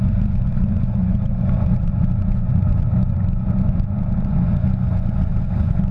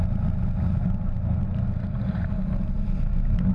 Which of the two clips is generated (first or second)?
first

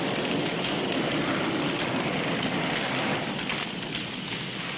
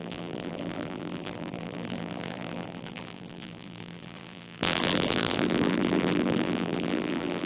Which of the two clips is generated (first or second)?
second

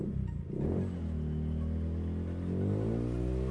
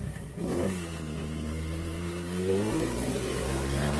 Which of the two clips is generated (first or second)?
second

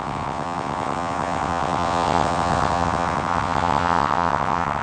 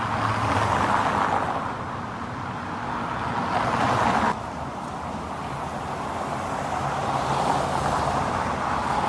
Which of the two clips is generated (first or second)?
first